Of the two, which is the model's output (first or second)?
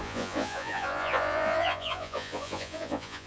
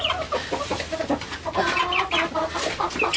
first